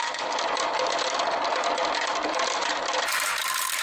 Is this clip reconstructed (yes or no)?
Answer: no